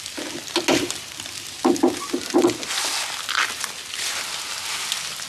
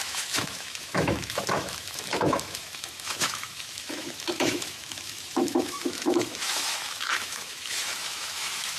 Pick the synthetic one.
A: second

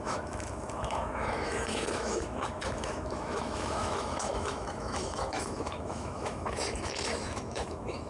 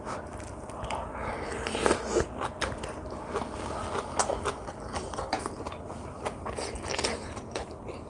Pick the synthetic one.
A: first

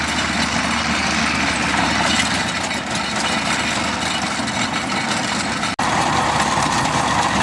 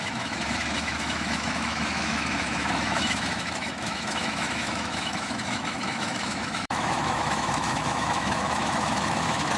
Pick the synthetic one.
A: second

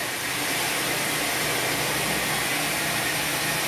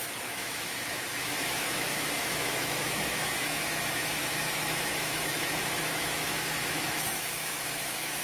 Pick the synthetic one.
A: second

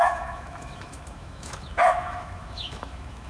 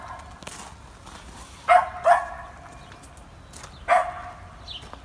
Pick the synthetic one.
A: first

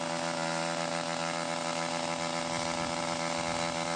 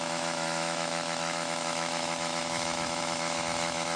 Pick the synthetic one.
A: second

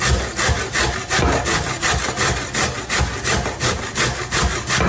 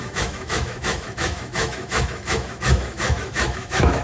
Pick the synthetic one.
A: second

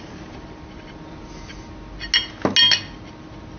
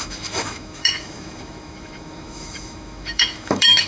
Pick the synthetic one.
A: second